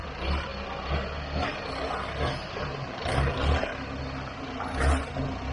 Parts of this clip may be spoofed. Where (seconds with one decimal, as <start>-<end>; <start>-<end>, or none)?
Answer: 2.7-4.0